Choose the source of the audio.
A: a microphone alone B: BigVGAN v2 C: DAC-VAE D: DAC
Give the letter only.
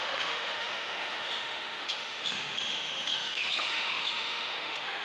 C